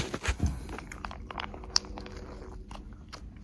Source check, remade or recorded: recorded